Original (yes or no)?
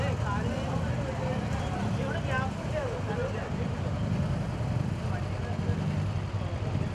yes